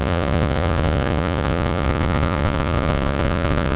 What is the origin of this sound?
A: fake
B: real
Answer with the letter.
A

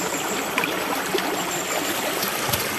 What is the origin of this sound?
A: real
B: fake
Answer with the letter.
B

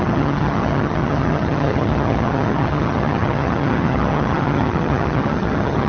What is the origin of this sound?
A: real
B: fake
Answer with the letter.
B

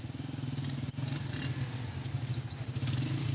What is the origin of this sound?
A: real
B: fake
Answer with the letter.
A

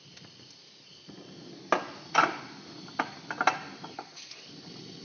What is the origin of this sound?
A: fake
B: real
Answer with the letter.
B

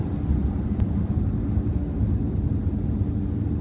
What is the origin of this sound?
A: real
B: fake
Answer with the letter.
A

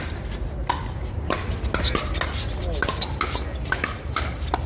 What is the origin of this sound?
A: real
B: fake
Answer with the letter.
A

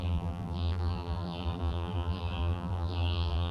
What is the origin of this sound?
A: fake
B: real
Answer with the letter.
A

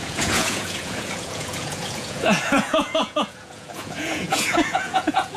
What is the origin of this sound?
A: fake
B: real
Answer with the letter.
A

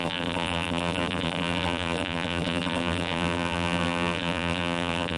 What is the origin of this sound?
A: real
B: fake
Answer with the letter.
B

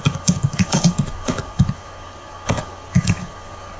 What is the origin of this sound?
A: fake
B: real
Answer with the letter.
A